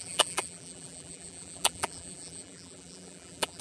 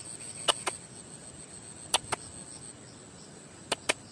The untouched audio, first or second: second